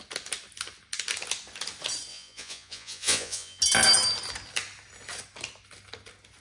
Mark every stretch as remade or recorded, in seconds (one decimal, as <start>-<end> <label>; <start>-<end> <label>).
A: 0.0-2.1 recorded; 2.1-3.6 remade; 3.6-6.4 recorded